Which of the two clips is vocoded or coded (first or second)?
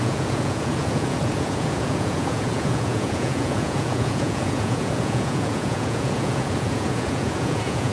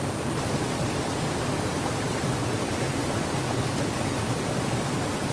first